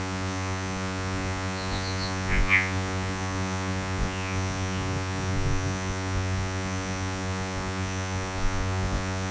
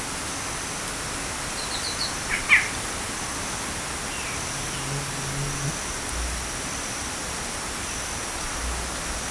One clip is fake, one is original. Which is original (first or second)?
second